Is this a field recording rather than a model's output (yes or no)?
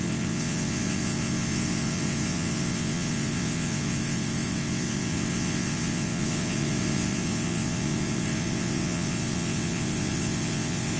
no